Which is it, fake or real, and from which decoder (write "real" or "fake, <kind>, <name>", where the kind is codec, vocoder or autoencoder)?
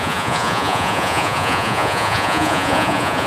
fake, vocoder, Vocos